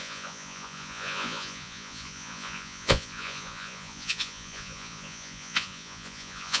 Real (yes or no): no